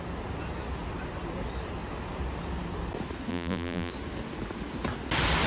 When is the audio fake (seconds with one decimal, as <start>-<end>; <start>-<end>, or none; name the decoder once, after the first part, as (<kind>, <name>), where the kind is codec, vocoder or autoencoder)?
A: 3.3-3.9 (vocoder, BigVGAN v2)